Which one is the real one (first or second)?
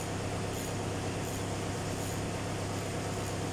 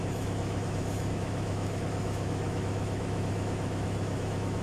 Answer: first